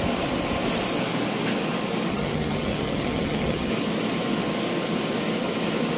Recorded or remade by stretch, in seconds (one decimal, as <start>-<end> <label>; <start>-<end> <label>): 0.0-2.1 recorded; 2.1-3.7 remade; 3.7-6.0 recorded

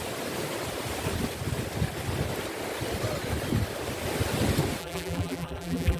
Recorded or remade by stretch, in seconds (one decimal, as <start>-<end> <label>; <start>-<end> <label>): 0.0-4.8 recorded; 4.8-6.0 remade

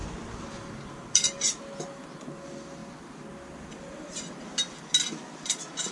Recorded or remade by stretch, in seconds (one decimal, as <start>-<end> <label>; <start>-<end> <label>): 0.0-5.9 recorded

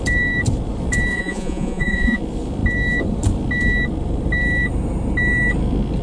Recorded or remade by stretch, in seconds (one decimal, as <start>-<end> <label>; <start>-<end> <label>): 0.0-1.1 recorded; 1.1-2.2 remade; 2.2-6.0 recorded

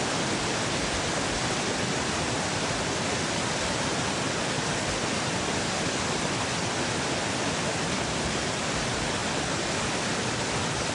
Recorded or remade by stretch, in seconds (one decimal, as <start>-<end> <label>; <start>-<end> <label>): 0.0-10.9 recorded

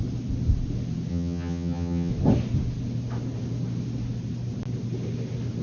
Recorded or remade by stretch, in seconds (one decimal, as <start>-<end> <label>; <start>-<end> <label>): 0.0-1.1 recorded; 1.1-2.1 remade; 2.1-5.6 recorded

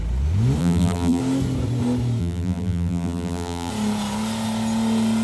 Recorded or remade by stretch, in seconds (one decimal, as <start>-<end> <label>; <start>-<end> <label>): 0.0-0.6 recorded; 0.6-1.2 remade; 1.2-2.2 recorded; 2.2-3.7 remade; 3.7-5.2 recorded